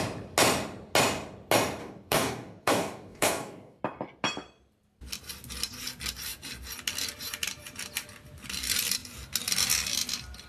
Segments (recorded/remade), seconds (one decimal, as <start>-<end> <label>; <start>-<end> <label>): 0.0-1.8 recorded; 1.8-3.8 remade; 3.8-10.5 recorded